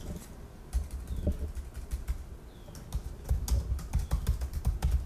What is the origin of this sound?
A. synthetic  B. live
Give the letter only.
B